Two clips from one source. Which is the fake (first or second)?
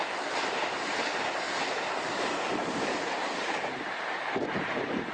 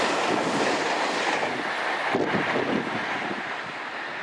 first